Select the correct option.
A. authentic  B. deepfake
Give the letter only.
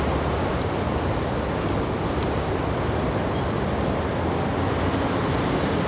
A